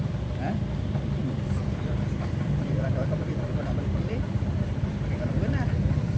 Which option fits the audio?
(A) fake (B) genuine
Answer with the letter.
A